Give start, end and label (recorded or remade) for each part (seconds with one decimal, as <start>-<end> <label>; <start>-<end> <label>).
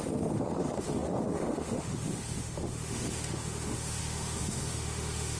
0.0-5.4 remade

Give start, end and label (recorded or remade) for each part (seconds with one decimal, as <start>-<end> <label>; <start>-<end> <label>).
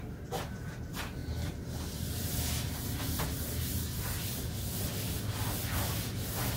0.0-6.6 recorded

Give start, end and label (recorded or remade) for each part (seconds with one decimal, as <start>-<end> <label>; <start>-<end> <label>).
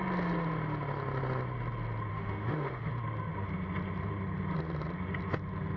0.0-2.1 recorded; 2.1-2.9 remade; 2.9-5.8 recorded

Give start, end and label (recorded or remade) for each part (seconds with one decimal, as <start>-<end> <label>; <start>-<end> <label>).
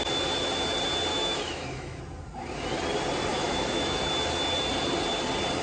0.0-1.1 recorded; 1.1-2.0 remade; 2.0-3.3 recorded; 3.3-4.1 remade; 4.1-5.6 recorded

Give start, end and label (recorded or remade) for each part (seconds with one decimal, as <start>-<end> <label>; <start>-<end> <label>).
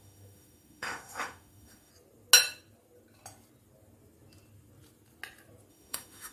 0.0-1.9 remade; 1.9-5.7 recorded; 5.7-6.3 remade